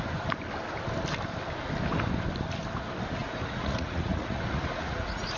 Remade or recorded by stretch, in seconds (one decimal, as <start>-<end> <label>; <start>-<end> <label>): 0.0-3.2 recorded; 3.2-5.4 remade